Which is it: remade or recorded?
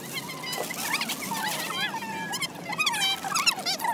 recorded